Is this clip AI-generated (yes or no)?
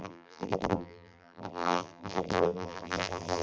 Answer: yes